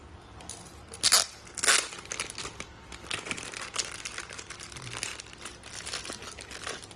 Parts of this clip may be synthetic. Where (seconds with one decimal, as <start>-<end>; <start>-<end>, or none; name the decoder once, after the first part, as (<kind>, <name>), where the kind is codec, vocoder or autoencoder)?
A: none